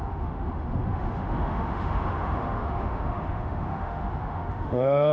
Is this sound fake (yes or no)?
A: yes